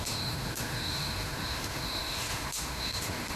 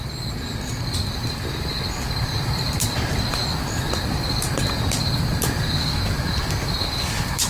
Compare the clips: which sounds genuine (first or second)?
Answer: second